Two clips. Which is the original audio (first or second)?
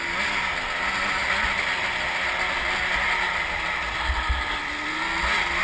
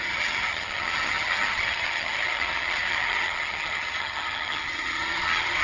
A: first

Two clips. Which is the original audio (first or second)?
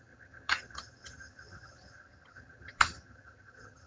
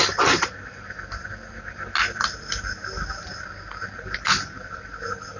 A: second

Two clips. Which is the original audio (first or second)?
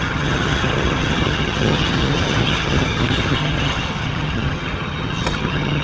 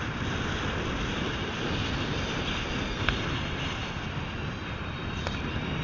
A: second